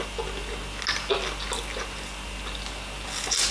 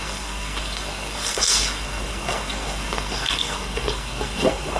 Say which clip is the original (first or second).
first